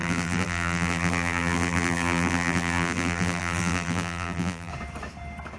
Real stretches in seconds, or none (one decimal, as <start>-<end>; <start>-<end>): 4.7-5.6